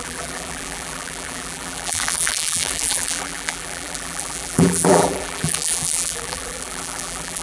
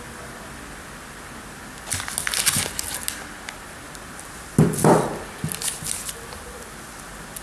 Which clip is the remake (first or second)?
first